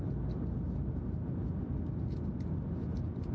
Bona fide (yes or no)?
yes